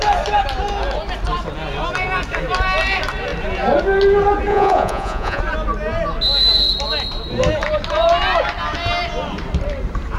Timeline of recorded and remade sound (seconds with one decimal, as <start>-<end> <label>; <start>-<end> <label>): 0.0-4.5 recorded; 4.5-5.4 remade; 5.4-10.2 recorded